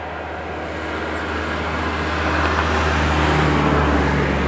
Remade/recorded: recorded